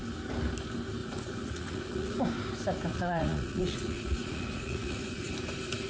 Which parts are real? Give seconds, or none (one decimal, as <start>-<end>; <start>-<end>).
0.0-1.0; 2.2-2.9; 5.3-5.9